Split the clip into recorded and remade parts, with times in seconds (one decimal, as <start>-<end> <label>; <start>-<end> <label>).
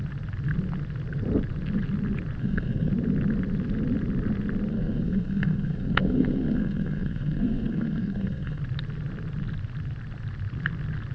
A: 0.0-2.4 recorded; 2.4-2.9 remade; 2.9-4.7 recorded; 4.7-8.6 remade; 8.6-11.1 recorded